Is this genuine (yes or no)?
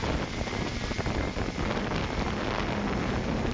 no